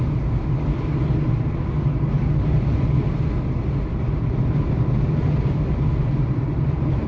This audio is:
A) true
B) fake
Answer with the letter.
A